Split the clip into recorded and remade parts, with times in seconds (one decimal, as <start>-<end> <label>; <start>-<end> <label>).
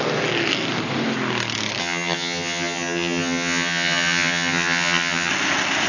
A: 0.0-1.8 recorded; 1.8-5.3 remade; 5.3-5.9 recorded